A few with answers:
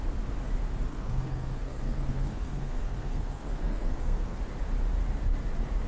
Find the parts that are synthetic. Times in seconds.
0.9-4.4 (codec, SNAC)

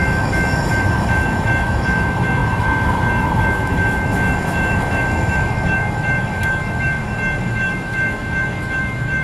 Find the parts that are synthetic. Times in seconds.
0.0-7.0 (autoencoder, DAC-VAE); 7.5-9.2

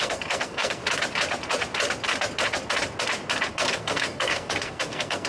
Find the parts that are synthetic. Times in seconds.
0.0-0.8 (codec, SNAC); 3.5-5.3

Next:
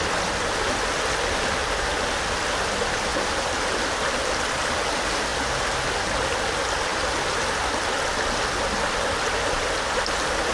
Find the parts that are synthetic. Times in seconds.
none

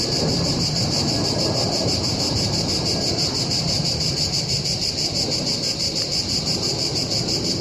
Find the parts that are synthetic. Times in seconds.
0.0-7.6 (vocoder, BigVGAN v2)